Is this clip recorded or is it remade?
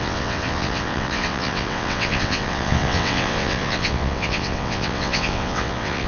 remade